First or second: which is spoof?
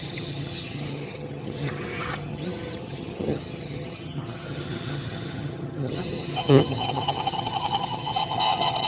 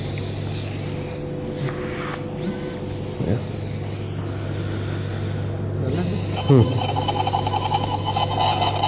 first